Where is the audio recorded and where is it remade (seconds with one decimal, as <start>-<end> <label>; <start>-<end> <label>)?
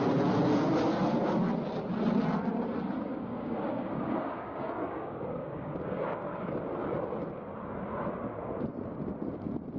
0.0-3.1 recorded; 3.1-6.5 remade; 6.5-9.8 recorded